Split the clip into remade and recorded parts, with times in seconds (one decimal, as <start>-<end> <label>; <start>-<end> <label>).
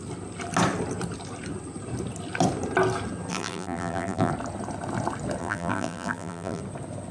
0.0-3.3 recorded; 3.3-4.3 remade; 4.3-5.4 recorded; 5.4-6.6 remade; 6.6-7.1 recorded